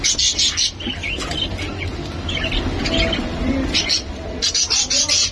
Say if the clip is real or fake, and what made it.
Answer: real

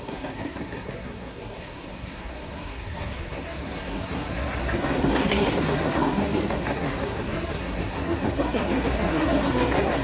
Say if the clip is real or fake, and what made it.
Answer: fake, codec, SNAC